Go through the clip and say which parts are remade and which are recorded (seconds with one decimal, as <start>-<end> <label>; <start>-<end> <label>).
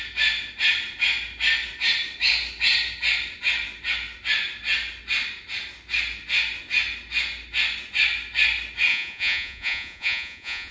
0.0-8.9 recorded; 8.9-10.7 remade